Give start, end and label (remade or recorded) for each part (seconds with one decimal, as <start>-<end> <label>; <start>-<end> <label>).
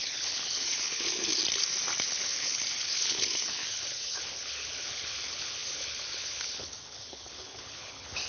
0.0-1.4 remade; 1.4-2.1 recorded; 2.1-8.3 remade